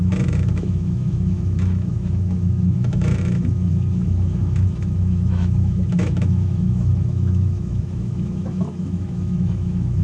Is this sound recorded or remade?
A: remade